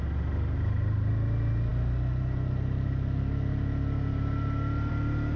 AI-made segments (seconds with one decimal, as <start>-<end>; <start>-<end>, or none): none